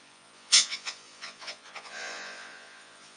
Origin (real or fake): fake